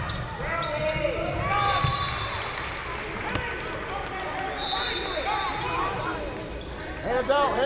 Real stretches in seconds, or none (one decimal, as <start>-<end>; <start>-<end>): 0.0-7.7